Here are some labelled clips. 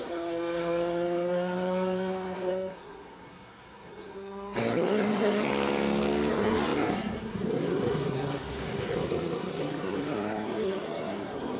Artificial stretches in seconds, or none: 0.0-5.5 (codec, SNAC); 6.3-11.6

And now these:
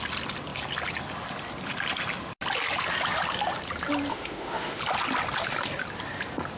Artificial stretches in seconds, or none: 4.1-4.8 (autoencoder, DAC-VAE)